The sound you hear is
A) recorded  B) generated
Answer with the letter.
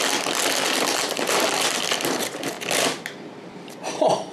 A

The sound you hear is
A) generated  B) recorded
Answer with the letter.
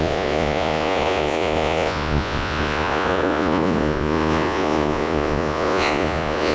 A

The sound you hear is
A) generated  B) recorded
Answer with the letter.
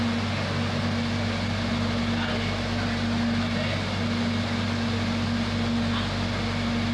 B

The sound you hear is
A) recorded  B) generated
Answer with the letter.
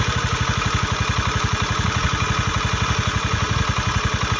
A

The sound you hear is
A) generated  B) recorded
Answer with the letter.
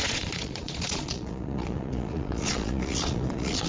A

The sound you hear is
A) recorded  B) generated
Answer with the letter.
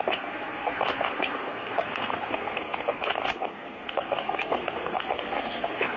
B